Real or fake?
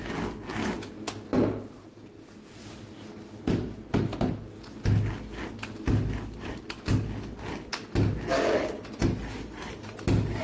real